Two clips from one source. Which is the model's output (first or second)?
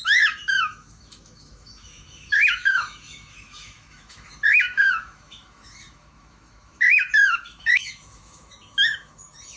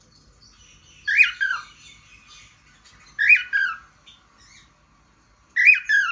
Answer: first